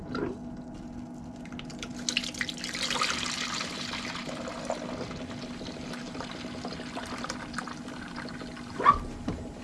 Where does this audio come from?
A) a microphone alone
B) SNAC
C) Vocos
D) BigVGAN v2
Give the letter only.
A